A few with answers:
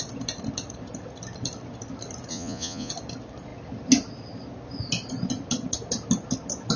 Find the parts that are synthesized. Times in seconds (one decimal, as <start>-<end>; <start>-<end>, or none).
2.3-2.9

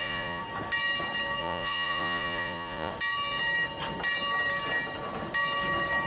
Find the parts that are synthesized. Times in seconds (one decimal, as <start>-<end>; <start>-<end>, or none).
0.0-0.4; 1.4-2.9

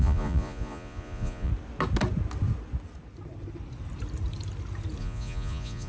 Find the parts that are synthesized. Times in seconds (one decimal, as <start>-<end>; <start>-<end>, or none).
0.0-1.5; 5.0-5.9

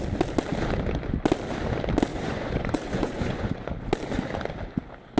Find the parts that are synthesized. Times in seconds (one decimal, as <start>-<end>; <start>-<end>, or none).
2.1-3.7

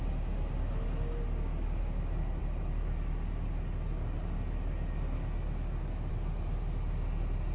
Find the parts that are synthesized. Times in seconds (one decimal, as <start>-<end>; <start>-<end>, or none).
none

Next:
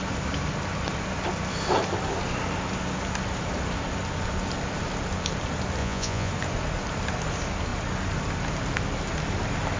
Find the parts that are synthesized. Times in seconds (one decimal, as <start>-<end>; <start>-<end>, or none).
5.8-6.3

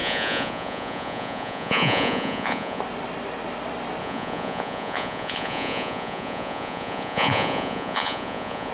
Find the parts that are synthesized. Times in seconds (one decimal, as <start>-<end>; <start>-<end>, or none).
0.0-2.8; 4.0-8.7